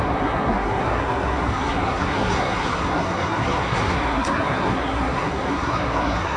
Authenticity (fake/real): fake